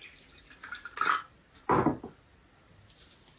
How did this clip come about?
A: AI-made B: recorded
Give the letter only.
B